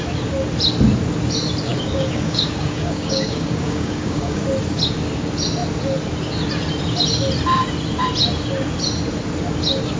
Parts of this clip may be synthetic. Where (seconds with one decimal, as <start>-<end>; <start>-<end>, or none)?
1.7-4.4